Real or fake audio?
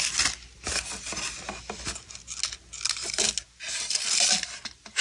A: real